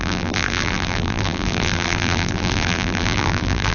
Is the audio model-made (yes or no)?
yes